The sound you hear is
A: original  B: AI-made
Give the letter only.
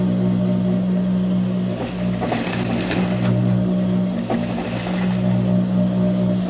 A